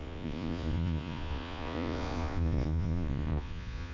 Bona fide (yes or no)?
no